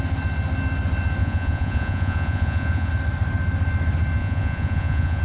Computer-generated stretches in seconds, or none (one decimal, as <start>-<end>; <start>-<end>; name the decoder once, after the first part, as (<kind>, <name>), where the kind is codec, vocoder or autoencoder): 1.2-2.9 (vocoder, Vocos); 4.2-5.2